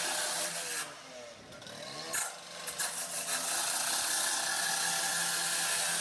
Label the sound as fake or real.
real